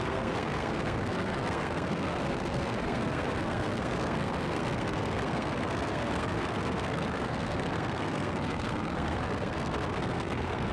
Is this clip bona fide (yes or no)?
no